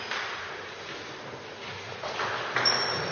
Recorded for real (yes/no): yes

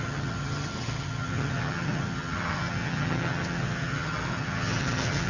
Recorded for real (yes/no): no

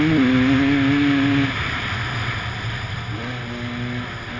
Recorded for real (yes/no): yes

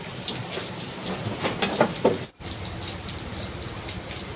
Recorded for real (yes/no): yes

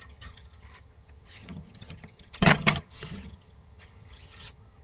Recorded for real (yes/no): no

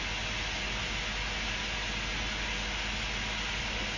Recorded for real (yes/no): yes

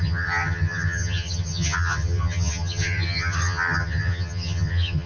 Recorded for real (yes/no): no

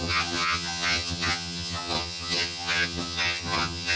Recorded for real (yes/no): no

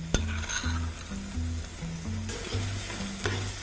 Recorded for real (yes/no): yes